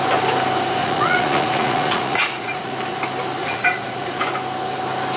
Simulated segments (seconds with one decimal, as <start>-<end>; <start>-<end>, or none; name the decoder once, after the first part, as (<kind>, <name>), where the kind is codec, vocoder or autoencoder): 0.8-2.7 (vocoder, Vocos); 3.4-4.2